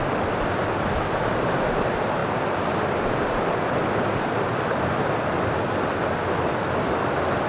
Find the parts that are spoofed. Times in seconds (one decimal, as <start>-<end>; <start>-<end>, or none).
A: none